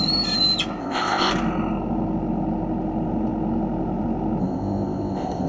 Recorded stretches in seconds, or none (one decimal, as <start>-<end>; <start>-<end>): 0.0-0.8; 1.3-4.4